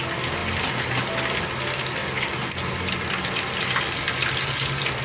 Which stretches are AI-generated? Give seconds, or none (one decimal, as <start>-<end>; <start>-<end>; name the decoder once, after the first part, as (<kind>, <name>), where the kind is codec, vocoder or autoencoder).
none